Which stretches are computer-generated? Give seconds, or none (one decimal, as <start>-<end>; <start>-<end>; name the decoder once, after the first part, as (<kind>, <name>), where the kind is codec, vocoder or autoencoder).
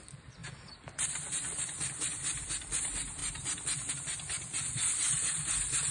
0.4-1.9 (vocoder, BigVGAN v2)